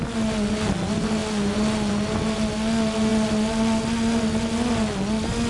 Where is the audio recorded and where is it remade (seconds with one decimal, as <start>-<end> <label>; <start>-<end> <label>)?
0.0-5.5 recorded